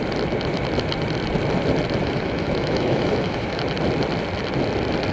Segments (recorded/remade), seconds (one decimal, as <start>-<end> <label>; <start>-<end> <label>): 0.0-2.0 recorded; 2.0-3.6 remade; 3.6-5.1 recorded